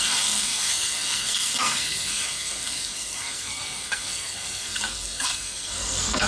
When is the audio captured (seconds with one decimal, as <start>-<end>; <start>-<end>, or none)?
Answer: none